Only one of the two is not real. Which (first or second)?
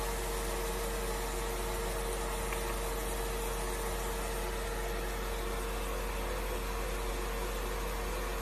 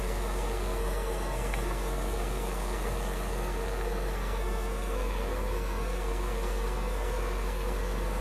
second